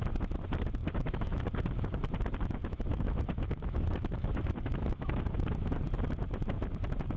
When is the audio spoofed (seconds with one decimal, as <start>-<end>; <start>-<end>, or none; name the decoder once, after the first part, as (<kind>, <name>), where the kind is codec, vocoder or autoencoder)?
0.8-1.4 (autoencoder, DAC-VAE); 2.6-5.7